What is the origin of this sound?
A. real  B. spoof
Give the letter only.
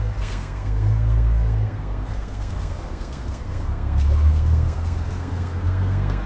B